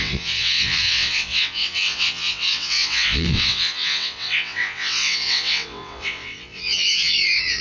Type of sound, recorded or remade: remade